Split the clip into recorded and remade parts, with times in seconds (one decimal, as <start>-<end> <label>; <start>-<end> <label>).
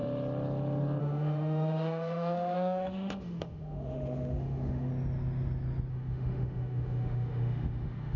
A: 0.0-1.0 recorded; 1.0-4.9 remade; 4.9-5.9 recorded; 5.9-8.2 remade